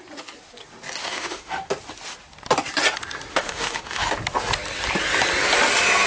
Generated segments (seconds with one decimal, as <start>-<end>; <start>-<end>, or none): 1.0-1.7; 3.3-4.1